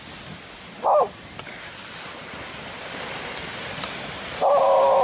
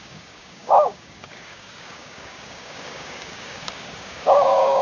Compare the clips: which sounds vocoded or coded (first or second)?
second